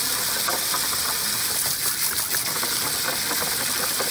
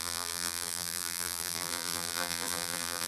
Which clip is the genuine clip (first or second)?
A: first